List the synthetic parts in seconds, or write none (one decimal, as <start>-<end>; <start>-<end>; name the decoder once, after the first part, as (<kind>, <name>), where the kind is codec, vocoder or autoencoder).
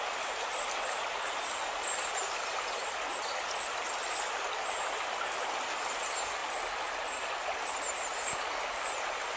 none